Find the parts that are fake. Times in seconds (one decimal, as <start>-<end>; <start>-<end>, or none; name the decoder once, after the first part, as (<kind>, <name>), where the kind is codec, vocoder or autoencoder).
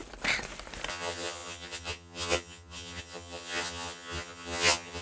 0.9-5.0 (vocoder, HiFi-GAN)